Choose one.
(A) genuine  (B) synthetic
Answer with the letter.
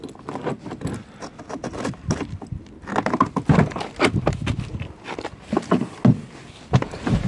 A